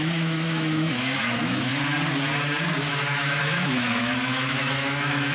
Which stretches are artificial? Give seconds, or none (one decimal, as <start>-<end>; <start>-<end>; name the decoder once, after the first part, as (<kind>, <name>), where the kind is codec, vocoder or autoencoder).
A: 0.0-1.7 (autoencoder, DAC-VAE); 2.9-5.3